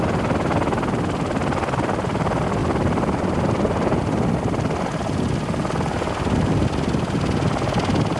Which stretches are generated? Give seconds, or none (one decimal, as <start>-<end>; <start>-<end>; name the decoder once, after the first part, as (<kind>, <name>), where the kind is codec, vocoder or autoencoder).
none